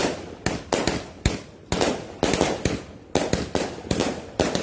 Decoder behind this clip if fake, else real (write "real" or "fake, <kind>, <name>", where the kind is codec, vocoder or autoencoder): real